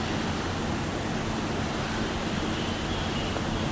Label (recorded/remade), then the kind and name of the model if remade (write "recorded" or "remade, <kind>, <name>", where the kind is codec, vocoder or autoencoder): recorded